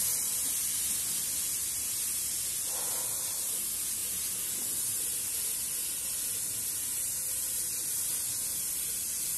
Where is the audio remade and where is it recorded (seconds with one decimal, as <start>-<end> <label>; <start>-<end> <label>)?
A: 0.0-9.4 recorded